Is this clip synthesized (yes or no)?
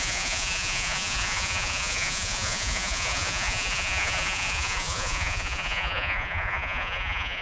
yes